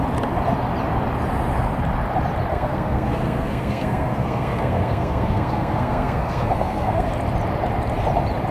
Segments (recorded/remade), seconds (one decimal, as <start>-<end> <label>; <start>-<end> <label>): 0.0-2.5 recorded; 2.5-7.1 remade; 7.1-8.5 recorded

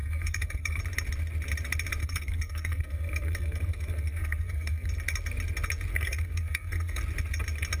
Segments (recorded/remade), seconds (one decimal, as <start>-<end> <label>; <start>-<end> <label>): 0.0-0.8 remade; 0.8-2.0 recorded; 2.0-4.9 remade; 4.9-5.9 recorded; 5.9-7.0 remade; 7.0-7.8 recorded

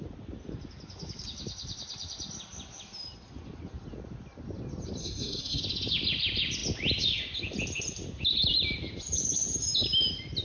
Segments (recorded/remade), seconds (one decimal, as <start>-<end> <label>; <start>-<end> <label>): 0.0-5.0 recorded; 5.0-5.6 remade; 5.6-10.4 recorded